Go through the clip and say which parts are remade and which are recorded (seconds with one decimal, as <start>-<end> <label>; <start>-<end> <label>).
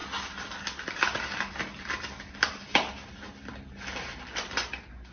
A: 0.0-5.1 recorded